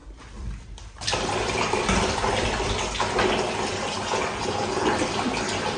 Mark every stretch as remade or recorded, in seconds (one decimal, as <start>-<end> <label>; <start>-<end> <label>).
0.0-5.8 remade